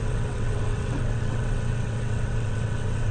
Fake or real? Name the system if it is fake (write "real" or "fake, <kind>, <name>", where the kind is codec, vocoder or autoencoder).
fake, vocoder, WaveNeXt